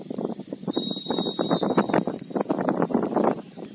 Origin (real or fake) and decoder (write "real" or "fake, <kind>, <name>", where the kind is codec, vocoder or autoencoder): real